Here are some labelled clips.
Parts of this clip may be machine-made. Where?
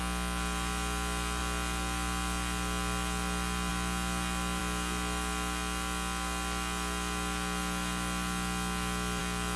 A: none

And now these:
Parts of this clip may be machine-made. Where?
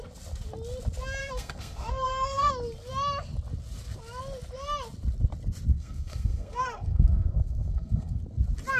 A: 1.2-2.5 (codec, SNAC); 5.7-8.2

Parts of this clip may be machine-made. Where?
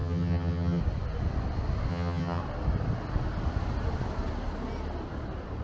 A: 0.0-0.8 (vocoder, HiFi-GAN); 1.9-2.4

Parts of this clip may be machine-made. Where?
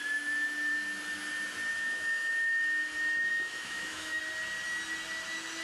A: 1.7-2.3 (autoencoder, DAC-VAE); 3.3-4.2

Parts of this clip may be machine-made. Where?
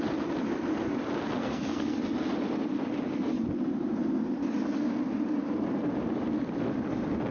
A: 1.4-2.0 (codec, SNAC)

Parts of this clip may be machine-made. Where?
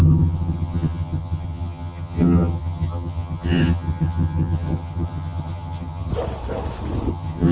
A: 0.0-6.1 (vocoder, HiFi-GAN); 7.1-7.5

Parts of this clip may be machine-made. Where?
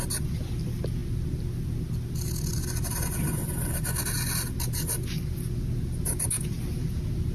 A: none